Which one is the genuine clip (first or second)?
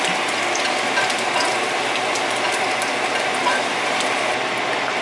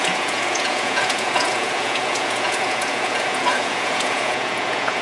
first